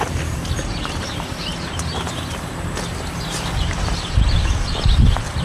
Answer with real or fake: fake